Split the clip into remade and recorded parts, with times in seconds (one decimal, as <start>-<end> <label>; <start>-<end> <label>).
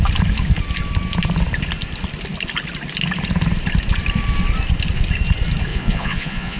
0.0-5.7 recorded; 5.7-6.6 remade